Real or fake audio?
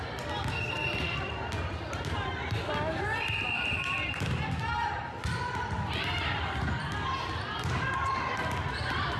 real